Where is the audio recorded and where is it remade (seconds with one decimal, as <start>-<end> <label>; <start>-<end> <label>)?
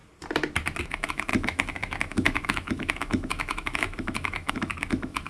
0.0-0.8 recorded; 0.8-5.3 remade